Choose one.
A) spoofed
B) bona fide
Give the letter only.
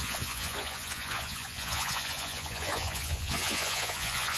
A